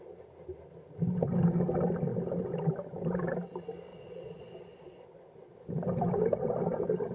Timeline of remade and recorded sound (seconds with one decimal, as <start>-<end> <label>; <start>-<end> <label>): 0.0-3.9 recorded; 3.9-4.4 remade; 4.4-7.1 recorded